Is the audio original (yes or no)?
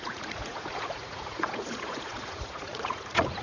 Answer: no